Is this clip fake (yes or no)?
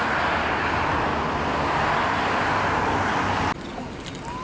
no